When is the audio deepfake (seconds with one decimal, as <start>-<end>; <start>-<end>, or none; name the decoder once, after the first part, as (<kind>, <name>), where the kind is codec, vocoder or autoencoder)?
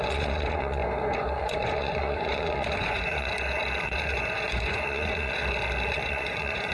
0.0-0.8 (vocoder, Vocos); 1.4-3.3; 3.8-5.4; 5.9-6.7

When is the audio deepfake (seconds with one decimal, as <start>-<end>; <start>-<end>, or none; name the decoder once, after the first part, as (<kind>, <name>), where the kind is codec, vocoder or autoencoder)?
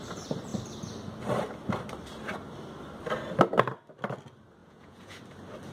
4.6-5.2 (vocoder, Vocos)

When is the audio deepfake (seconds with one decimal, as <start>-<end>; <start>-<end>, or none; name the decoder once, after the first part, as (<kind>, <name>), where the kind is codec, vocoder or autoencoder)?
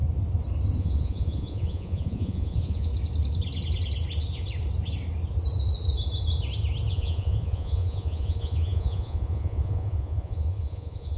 0.8-2.9 (vocoder, Vocos); 6.9-11.2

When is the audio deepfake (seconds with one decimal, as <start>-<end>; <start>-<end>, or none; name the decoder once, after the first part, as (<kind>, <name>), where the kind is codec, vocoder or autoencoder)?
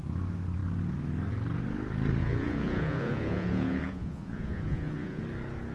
2.2-5.2 (vocoder, Vocos)